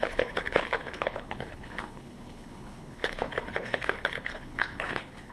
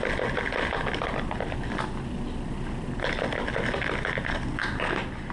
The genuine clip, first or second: second